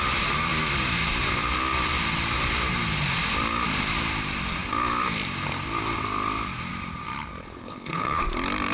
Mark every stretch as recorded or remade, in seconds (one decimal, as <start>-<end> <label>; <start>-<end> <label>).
0.0-7.4 recorded; 7.4-8.2 remade; 8.2-8.7 recorded